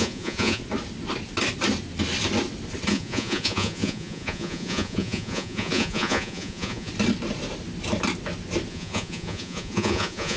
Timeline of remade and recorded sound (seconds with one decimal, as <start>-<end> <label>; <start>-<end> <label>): 0.0-0.6 remade; 0.6-2.9 recorded; 2.9-6.9 remade; 6.9-8.7 recorded; 8.7-10.4 remade